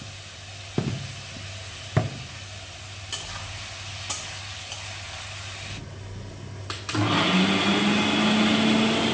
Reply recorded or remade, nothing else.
recorded